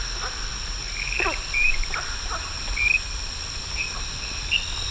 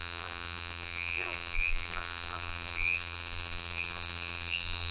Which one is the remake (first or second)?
second